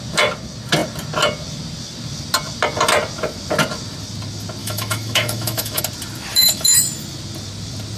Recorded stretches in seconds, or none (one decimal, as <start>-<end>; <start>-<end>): 0.0-4.6; 5.8-6.3; 7.0-8.0